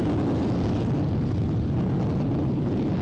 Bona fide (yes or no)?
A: yes